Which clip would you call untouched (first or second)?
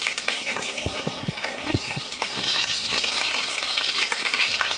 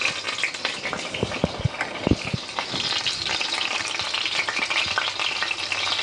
second